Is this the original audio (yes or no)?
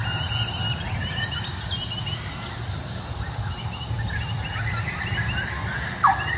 yes